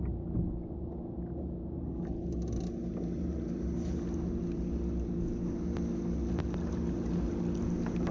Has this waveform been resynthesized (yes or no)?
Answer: no